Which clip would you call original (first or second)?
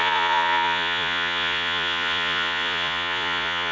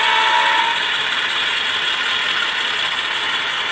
second